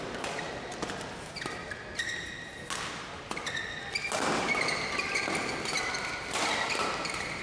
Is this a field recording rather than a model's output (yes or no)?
yes